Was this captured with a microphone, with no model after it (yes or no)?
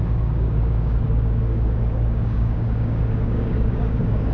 no